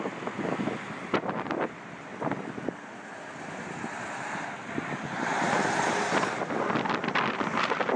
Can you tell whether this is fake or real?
real